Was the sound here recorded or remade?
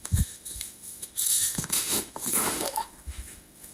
remade